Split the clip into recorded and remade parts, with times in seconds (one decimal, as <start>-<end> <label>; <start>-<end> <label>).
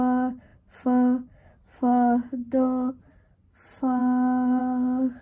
0.0-5.2 recorded